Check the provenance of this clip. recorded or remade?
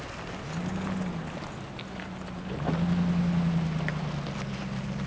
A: recorded